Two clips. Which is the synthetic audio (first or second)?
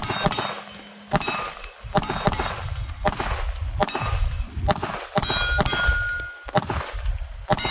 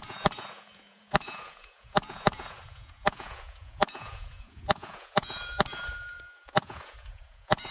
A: second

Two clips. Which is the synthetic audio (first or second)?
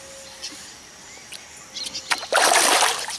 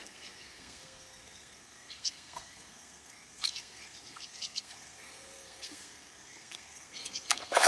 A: second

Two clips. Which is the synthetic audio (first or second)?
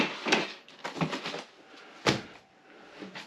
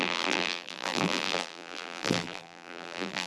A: second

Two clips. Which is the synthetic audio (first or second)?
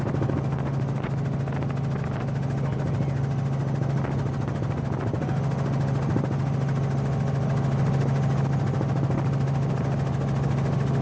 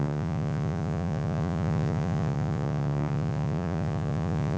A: second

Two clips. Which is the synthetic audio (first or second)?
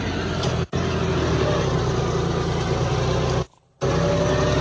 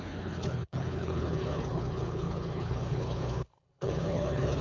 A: second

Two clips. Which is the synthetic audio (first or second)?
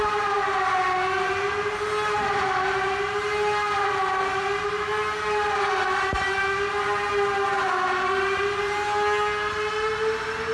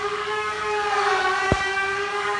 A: second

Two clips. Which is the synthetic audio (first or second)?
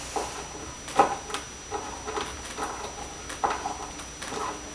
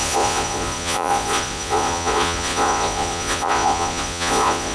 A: second